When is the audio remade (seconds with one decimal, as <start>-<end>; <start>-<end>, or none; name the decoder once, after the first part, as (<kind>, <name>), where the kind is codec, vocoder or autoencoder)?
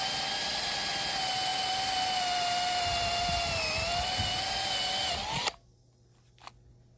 none